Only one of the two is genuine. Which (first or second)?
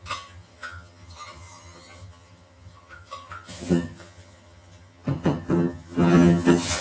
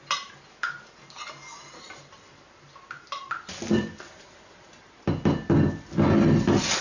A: second